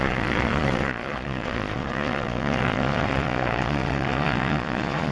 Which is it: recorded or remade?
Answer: remade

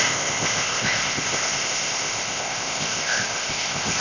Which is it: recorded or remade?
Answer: remade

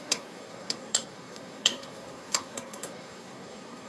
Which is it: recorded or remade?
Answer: remade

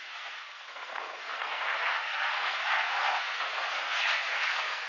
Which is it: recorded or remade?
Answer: remade